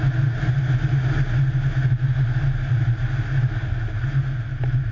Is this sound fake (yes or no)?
no